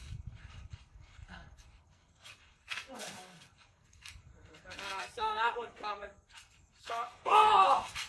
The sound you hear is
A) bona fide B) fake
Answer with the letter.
B